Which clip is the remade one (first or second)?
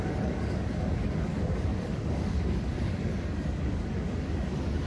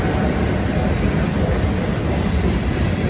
first